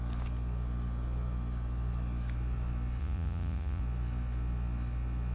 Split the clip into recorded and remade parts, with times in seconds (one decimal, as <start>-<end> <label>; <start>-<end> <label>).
0.0-3.0 recorded; 3.0-3.8 remade; 3.8-5.3 recorded